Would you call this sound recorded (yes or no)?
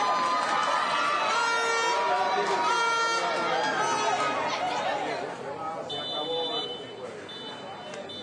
yes